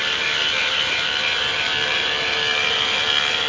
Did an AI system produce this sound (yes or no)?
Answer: no